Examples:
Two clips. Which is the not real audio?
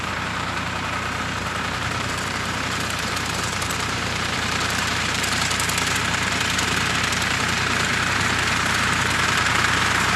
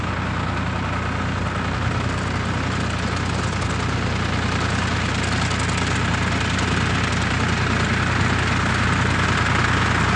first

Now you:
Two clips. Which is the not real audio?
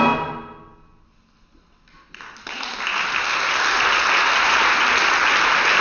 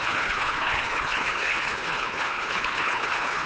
second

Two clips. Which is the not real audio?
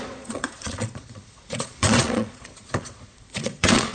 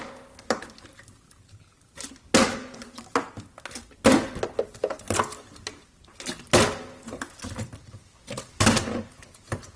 first